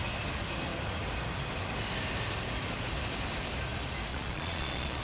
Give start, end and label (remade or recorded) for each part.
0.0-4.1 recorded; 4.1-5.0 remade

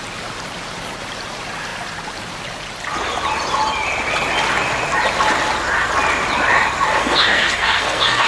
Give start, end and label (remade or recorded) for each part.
0.0-7.0 recorded; 7.0-8.3 remade

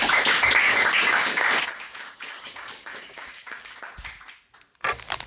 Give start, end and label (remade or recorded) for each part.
0.0-0.6 recorded; 0.6-3.8 remade; 3.8-5.3 recorded

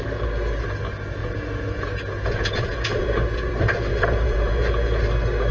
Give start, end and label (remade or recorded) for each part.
0.0-1.2 recorded; 1.2-3.5 remade; 3.5-3.9 recorded; 3.9-5.0 remade; 5.0-5.5 recorded

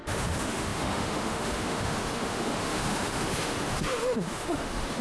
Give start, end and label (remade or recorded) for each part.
0.0-5.0 remade

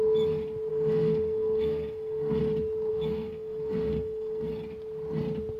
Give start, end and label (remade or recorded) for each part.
0.0-0.7 recorded; 0.7-2.4 remade; 2.4-2.9 recorded; 2.9-4.5 remade; 4.5-5.6 recorded

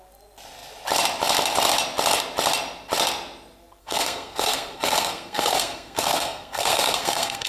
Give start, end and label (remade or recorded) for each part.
0.0-3.8 recorded; 3.8-7.5 remade